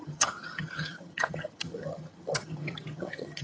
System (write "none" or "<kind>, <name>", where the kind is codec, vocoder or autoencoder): vocoder, HiFi-GAN